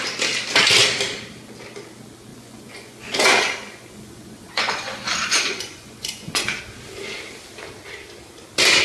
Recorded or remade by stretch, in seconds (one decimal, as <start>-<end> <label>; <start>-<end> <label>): 0.0-2.3 recorded; 2.3-6.6 remade; 6.6-8.8 recorded